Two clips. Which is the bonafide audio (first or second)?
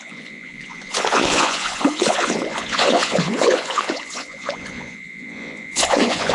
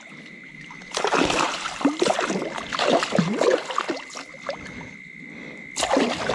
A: second